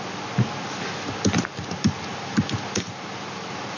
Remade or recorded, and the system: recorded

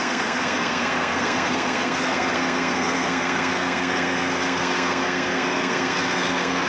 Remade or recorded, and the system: remade, codec, SNAC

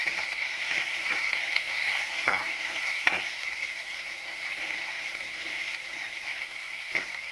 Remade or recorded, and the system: remade, codec, SNAC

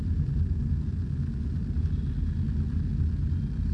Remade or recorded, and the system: recorded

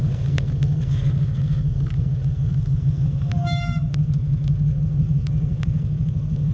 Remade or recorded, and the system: remade, codec, SNAC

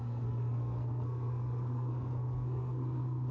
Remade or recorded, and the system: remade, codec, SNAC